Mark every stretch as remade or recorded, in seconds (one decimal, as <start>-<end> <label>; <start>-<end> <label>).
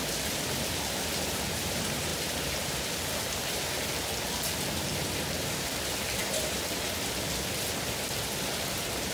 0.0-9.1 recorded